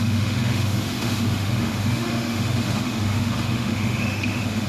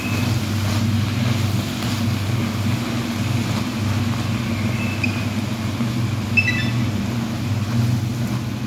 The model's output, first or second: first